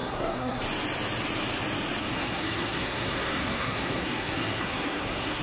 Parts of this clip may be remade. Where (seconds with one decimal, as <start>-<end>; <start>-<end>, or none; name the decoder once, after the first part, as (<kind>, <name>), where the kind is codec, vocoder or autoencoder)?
0.0-0.6 (codec, SNAC); 2.0-5.4